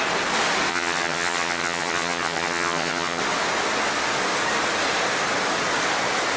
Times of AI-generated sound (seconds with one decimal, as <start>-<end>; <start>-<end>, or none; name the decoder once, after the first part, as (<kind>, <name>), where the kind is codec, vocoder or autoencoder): 0.7-3.2 (vocoder, HiFi-GAN)